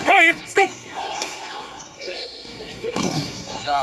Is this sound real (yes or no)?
no